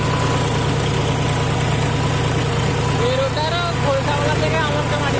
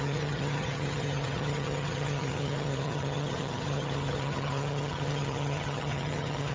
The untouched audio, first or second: first